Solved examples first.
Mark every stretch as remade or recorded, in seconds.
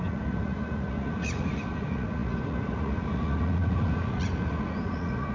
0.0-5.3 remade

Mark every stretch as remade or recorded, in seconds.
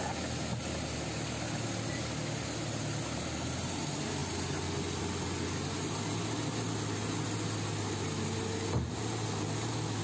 0.0-10.0 recorded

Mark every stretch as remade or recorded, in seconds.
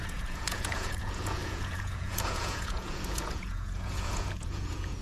0.0-5.0 remade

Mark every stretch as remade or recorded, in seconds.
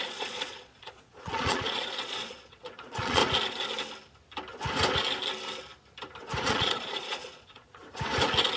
0.0-3.2 remade; 3.2-6.5 recorded; 6.5-7.8 remade; 7.8-8.6 recorded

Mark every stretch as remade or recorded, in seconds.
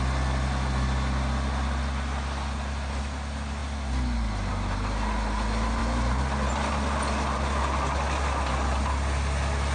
0.0-9.7 recorded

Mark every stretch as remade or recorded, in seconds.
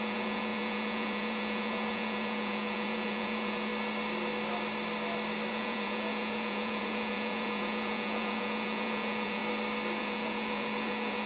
0.0-3.7 remade; 3.7-5.5 recorded; 5.5-9.4 remade; 9.4-10.0 recorded; 10.0-11.3 remade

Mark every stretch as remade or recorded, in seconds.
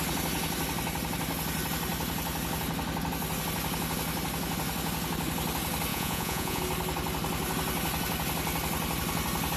0.0-5.9 recorded; 5.9-6.6 remade; 6.6-9.6 recorded